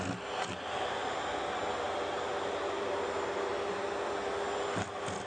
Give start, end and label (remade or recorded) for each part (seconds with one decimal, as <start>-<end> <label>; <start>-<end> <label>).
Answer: 0.0-5.3 recorded